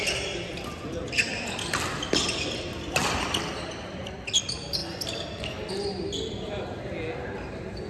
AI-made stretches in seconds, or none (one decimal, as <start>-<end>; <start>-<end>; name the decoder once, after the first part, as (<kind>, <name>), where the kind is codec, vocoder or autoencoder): none